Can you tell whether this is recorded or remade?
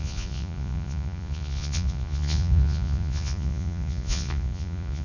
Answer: remade